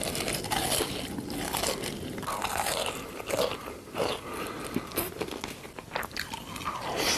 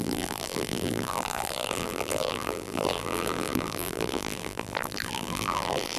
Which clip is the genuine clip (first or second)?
first